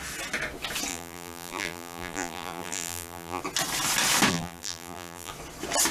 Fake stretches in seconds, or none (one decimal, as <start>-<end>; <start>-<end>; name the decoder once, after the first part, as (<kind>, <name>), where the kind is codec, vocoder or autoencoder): 0.9-3.4 (vocoder, BigVGAN v2); 4.3-5.3